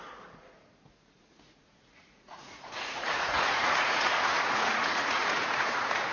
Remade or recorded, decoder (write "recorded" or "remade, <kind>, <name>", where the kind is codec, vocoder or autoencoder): remade, vocoder, Vocos